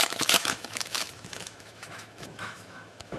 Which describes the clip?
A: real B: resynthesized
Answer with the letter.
B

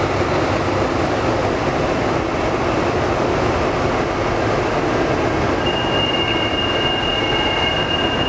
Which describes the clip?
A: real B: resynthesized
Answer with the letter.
A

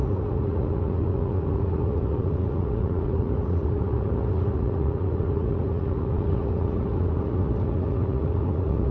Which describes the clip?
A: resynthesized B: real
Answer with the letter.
A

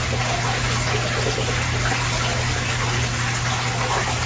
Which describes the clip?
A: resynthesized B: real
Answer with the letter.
B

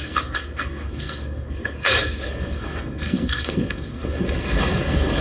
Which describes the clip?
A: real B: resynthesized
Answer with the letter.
B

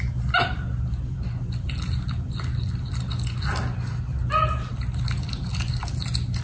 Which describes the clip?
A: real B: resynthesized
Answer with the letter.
A